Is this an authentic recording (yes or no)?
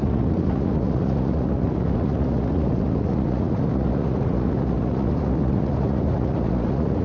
no